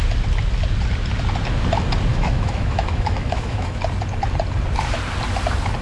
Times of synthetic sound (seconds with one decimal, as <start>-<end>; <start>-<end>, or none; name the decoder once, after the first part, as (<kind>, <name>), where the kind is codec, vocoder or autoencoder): 2.1-3.8 (autoencoder, DAC-VAE)